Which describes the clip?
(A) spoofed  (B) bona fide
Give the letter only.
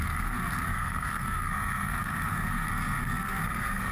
A